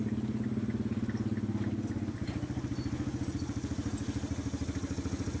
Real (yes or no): yes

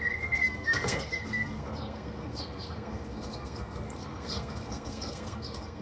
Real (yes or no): no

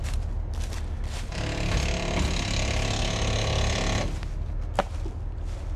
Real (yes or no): yes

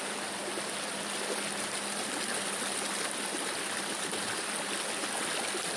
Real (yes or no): yes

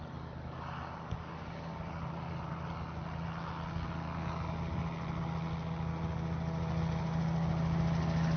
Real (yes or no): yes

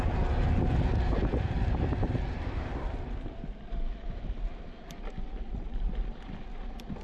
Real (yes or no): yes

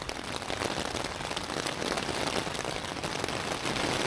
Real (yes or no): yes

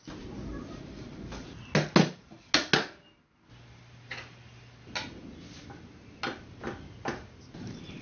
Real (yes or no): yes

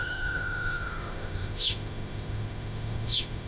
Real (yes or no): no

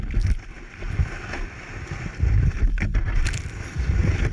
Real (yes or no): yes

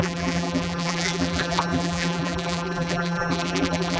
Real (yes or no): no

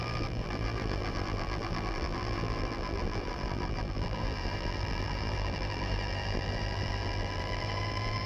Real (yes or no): no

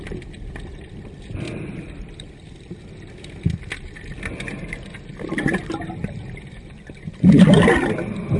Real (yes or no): yes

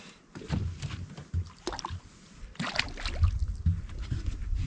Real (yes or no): yes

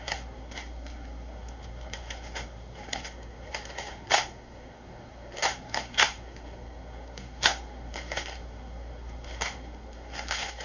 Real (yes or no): no